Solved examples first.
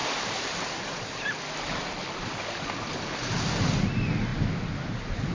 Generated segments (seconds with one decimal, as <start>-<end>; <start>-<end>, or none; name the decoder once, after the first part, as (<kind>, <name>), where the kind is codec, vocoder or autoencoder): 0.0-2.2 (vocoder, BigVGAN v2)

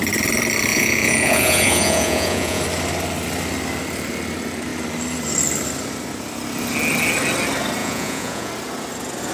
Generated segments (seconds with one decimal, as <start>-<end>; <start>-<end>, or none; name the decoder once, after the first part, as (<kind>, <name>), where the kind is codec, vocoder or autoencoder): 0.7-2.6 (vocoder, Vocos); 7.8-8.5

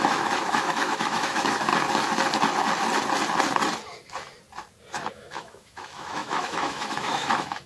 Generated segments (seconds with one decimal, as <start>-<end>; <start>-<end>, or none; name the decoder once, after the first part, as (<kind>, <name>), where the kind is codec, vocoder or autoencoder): 0.0-1.7 (autoencoder, DAC-VAE); 5.1-7.7